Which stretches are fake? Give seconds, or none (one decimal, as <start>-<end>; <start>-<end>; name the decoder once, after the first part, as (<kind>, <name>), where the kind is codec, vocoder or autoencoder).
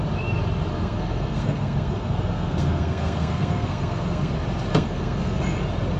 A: 0.7-4.3 (codec, SNAC); 4.7-5.4